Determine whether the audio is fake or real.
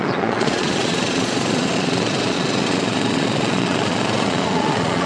fake